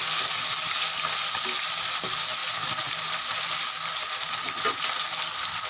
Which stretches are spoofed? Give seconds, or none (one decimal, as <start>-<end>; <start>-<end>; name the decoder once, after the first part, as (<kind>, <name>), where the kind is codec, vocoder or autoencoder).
none